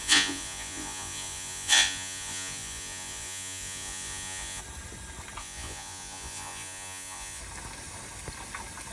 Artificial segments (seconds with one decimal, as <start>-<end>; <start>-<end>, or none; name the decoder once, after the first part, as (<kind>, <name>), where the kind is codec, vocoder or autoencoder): 0.0-4.6 (vocoder, Vocos); 5.4-7.4